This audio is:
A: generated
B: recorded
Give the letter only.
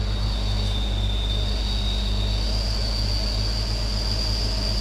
B